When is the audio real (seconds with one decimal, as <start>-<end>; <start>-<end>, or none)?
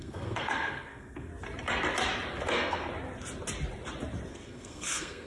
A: 1.3-2.5; 2.9-4.3